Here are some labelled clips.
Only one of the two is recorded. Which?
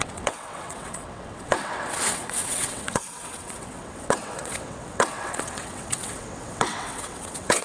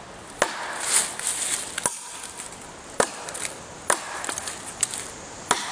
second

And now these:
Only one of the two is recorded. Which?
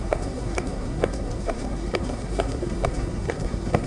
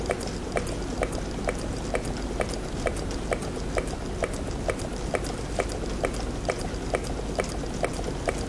second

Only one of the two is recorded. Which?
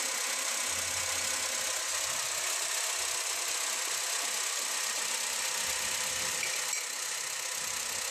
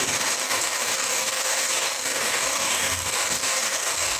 first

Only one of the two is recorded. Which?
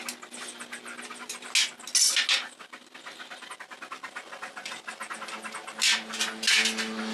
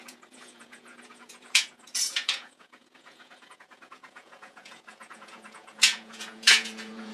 first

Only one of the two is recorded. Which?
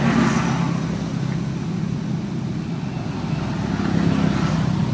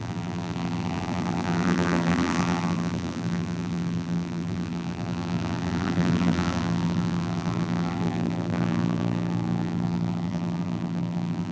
first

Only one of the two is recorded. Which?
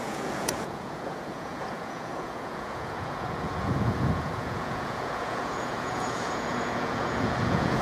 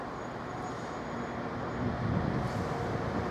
second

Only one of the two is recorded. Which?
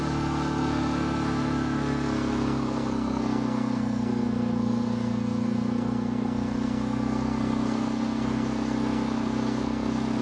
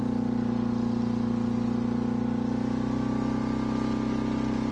second